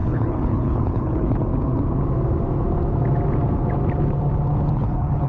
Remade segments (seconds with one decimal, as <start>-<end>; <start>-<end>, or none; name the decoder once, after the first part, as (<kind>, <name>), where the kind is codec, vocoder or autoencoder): 0.0-1.5 (codec, HILCodec); 4.7-5.3